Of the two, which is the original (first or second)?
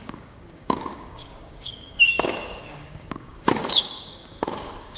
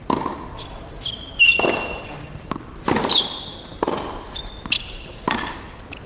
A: second